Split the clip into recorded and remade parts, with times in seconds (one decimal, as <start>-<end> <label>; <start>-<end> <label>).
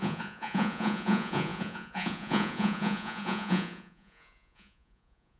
0.0-5.4 remade